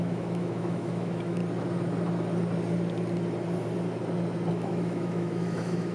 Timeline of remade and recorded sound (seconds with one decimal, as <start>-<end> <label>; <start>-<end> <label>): 0.0-1.4 remade; 1.4-4.5 recorded; 4.5-5.9 remade